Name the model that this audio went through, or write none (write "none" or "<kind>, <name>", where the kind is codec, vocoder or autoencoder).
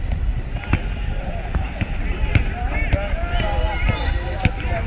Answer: none